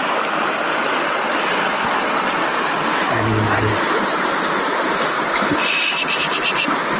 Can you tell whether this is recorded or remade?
recorded